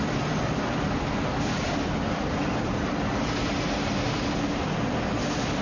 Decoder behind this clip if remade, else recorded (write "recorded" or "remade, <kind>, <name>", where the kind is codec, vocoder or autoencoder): recorded